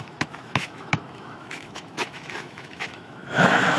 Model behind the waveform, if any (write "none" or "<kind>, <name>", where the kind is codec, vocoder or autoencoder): autoencoder, DAC-VAE